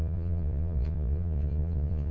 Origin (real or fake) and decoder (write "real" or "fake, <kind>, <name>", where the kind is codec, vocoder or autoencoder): fake, vocoder, Vocos